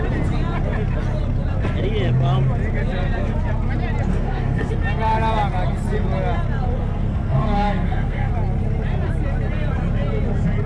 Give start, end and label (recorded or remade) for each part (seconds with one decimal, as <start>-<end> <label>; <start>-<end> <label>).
0.0-4.1 recorded; 4.1-4.7 remade; 4.7-6.8 recorded; 6.8-8.3 remade; 8.3-10.7 recorded